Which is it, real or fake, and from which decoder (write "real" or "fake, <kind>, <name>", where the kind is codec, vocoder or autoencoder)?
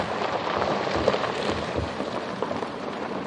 fake, vocoder, BigVGAN v2